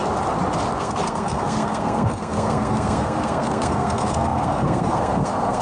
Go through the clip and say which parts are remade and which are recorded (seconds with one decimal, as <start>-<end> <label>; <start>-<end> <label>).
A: 0.0-0.8 recorded; 0.8-5.6 remade